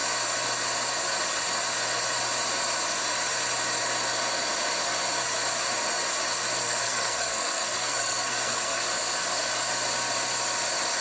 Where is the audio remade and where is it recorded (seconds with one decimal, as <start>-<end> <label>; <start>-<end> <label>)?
0.0-6.6 recorded; 6.6-8.8 remade; 8.8-11.0 recorded

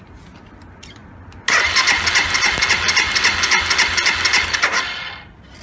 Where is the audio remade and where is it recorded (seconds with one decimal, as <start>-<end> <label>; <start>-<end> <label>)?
0.0-5.6 recorded

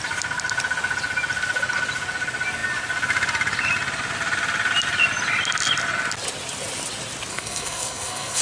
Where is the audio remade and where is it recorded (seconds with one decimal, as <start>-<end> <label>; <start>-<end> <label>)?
0.0-7.3 recorded; 7.3-8.4 remade

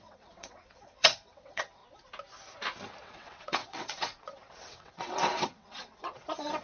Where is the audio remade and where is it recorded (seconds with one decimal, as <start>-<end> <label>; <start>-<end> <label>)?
0.0-1.8 remade; 1.8-3.0 recorded; 3.0-6.6 remade

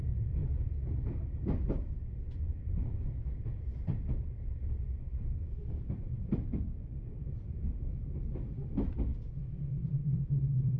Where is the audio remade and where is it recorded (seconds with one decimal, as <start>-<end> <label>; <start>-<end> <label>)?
0.0-10.8 remade

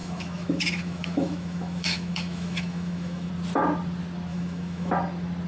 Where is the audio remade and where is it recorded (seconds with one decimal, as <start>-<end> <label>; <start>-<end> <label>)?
0.0-3.3 remade; 3.3-4.3 recorded; 4.3-4.9 remade; 4.9-5.5 recorded